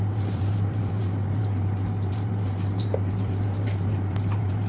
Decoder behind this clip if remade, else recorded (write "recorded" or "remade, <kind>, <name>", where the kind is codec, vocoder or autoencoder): remade, vocoder, BigVGAN v2